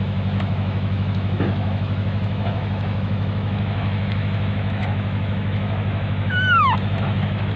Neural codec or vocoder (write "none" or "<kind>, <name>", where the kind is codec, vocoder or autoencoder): autoencoder, DAC-VAE